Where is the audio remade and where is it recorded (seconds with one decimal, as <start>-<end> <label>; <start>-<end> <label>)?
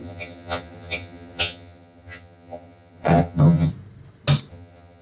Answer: 0.0-3.7 remade; 3.7-4.5 recorded; 4.5-5.0 remade